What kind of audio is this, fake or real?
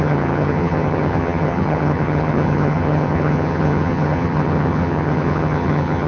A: fake